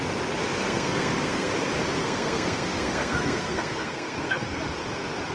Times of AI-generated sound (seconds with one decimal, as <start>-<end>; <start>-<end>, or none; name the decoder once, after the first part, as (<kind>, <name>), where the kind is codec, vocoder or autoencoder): 0.6-1.5 (codec, SNAC); 2.0-4.6